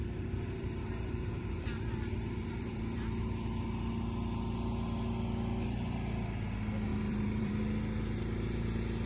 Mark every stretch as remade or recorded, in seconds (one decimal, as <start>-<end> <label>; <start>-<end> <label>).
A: 0.0-3.2 remade; 3.2-6.9 recorded; 6.9-7.5 remade; 7.5-9.1 recorded